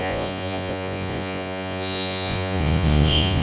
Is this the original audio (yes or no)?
no